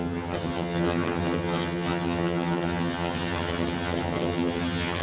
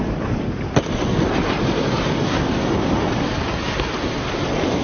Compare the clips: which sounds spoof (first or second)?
first